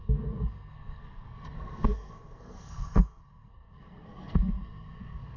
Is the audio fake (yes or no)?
yes